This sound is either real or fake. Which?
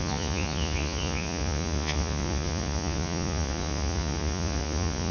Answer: fake